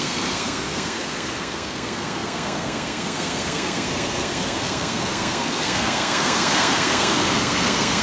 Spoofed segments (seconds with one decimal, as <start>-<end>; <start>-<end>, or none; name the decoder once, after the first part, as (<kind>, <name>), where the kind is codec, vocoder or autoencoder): 0.0-8.0 (codec, SNAC)